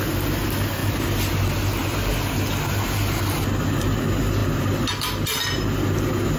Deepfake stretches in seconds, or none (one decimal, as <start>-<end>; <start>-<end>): none